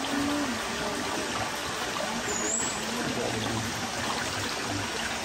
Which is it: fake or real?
real